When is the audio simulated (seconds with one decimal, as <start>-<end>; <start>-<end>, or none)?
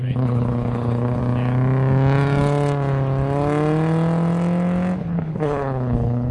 0.0-1.2; 5.0-6.3